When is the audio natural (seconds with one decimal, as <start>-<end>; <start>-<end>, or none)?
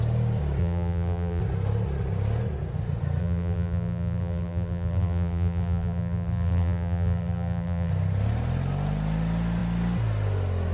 0.0-0.6; 1.4-3.2; 7.9-10.7